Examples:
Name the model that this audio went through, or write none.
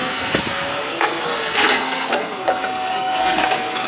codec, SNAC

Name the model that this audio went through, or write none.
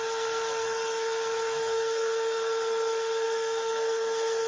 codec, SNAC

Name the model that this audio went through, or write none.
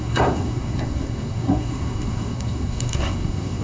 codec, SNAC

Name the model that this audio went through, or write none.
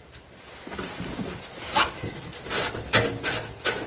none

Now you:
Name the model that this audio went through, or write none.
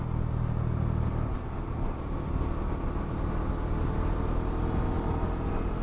none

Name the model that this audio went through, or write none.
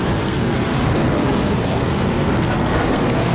codec, SNAC